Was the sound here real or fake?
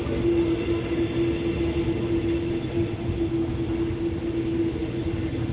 real